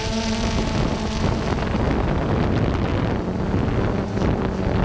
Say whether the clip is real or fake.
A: real